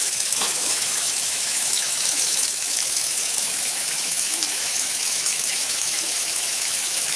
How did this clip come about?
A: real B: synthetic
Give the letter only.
B